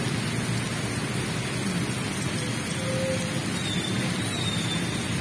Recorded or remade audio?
recorded